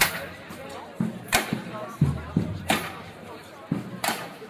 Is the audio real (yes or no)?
no